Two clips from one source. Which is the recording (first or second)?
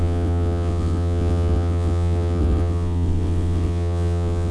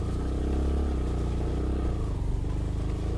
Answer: second